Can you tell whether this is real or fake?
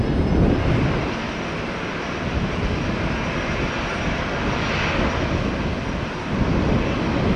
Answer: real